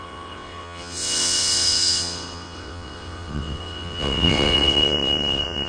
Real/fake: fake